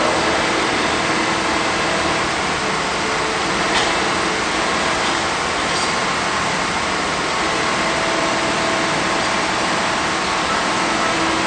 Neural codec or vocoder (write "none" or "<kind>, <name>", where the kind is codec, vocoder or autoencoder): none